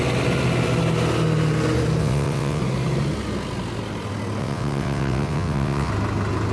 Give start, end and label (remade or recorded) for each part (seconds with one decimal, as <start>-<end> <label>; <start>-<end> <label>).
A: 0.0-2.0 recorded; 2.0-2.6 remade; 2.6-4.4 recorded; 4.4-5.9 remade; 5.9-6.5 recorded